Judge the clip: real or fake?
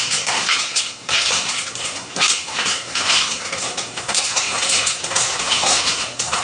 fake